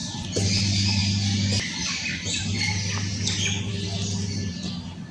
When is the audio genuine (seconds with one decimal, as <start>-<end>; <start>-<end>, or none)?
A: 0.0-5.1